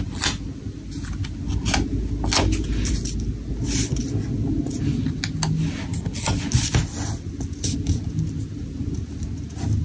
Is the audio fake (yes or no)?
no